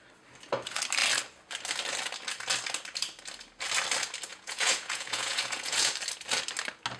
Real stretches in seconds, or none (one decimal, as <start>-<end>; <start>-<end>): 0.0-4.3; 5.9-7.0